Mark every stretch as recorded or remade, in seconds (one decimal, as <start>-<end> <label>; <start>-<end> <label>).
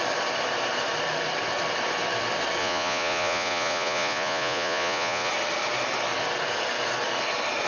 0.0-2.6 recorded; 2.6-5.3 remade; 5.3-7.7 recorded